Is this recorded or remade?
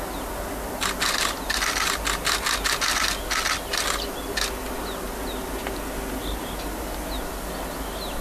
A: recorded